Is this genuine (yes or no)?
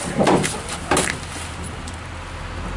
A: yes